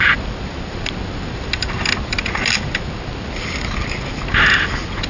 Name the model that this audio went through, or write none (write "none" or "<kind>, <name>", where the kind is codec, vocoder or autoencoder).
none